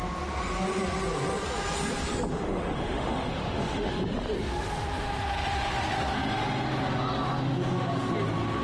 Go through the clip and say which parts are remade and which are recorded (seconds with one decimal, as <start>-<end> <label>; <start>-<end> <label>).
0.0-2.3 recorded; 2.3-3.9 remade; 3.9-8.6 recorded